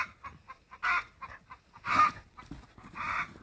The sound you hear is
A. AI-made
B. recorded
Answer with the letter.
B